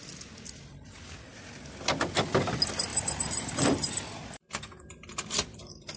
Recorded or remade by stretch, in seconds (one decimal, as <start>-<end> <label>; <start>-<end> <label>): 0.0-2.9 recorded; 2.9-6.0 remade